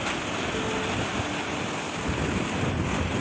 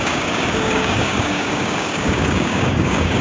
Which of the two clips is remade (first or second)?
second